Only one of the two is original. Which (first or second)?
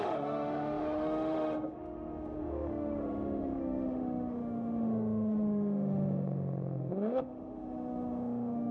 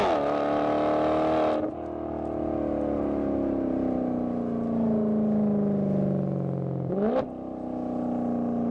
second